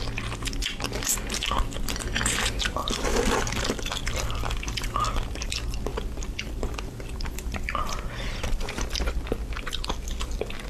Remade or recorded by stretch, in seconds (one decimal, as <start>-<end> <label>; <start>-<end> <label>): 0.0-2.8 recorded; 2.8-5.5 remade; 5.5-5.9 recorded; 5.9-8.1 remade; 8.1-10.7 recorded